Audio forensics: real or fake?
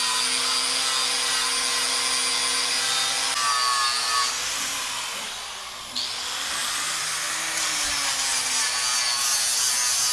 real